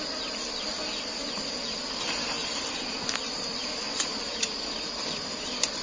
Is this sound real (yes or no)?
yes